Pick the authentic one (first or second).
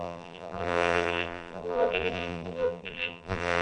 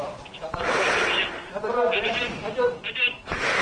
second